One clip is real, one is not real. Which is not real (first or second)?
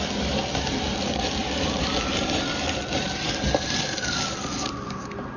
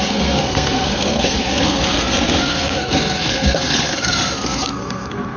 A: second